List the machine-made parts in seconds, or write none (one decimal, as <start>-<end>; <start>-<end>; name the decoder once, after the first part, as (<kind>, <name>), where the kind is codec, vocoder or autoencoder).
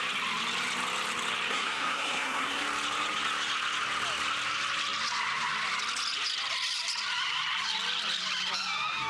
1.5-2.6 (codec, SNAC)